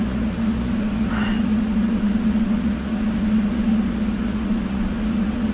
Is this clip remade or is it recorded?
remade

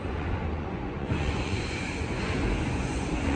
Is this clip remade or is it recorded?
remade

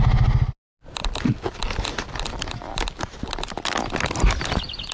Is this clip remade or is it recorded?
recorded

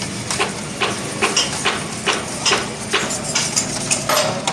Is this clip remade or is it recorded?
recorded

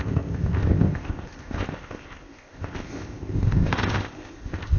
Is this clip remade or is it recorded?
remade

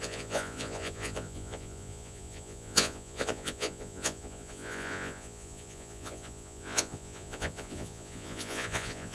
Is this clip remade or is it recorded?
remade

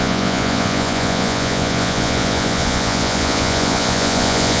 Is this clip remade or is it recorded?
remade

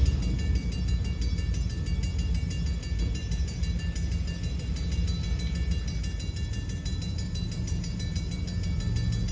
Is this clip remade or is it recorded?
recorded